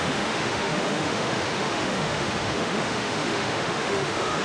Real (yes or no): no